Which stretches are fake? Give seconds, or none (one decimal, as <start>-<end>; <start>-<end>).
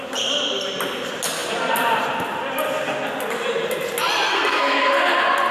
4.3-5.0